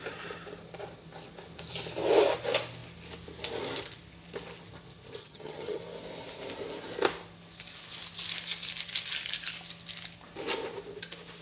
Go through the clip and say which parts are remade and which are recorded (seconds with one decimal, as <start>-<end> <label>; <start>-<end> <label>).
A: 0.0-5.2 recorded; 5.2-5.8 remade; 5.8-11.4 recorded

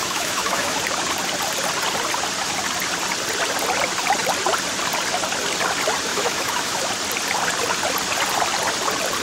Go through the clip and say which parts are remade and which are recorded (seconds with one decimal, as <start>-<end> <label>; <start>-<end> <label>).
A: 0.0-0.8 remade; 0.8-6.1 recorded; 6.1-6.9 remade; 6.9-9.2 recorded

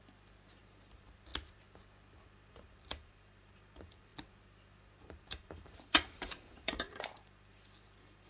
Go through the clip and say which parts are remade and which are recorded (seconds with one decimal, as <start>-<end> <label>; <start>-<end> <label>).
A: 0.0-0.6 recorded; 0.6-1.3 remade; 1.3-2.5 recorded; 2.5-4.1 remade; 4.1-5.0 recorded; 5.0-8.3 remade

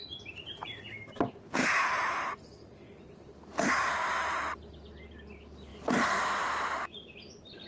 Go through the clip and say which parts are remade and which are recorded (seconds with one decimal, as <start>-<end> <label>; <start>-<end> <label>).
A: 0.0-7.7 recorded

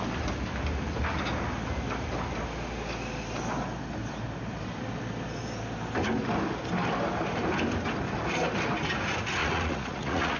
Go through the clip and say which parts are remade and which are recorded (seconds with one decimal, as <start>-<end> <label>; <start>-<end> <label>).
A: 0.0-9.4 recorded; 9.4-10.4 remade